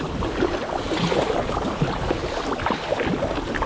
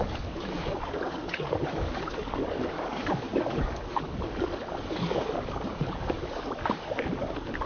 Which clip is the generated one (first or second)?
second